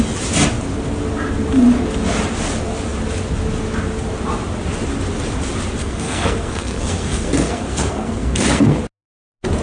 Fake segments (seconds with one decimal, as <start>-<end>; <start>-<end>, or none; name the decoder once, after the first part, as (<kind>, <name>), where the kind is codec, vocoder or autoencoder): 5.8-8.8 (codec, SNAC)

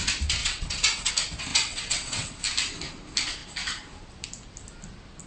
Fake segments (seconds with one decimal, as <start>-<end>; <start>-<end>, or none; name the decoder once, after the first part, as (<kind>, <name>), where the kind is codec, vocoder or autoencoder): 0.4-1.1 (vocoder, WaveNeXt); 1.5-2.4

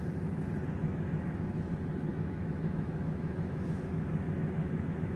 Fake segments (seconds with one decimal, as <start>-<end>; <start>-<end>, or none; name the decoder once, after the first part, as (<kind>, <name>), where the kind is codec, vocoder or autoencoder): 0.8-1.7 (autoencoder, DAC-VAE); 2.1-5.2

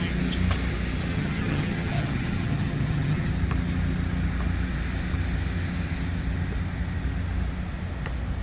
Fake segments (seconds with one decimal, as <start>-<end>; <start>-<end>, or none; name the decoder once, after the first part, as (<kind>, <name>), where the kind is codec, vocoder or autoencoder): 1.1-3.3 (vocoder, HiFi-GAN)

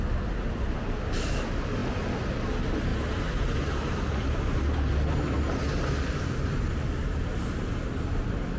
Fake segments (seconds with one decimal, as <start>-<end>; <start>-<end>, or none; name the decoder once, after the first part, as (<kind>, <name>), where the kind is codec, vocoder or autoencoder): none